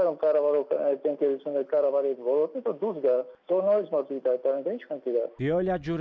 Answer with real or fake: real